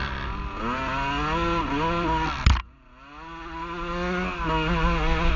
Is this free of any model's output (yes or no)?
yes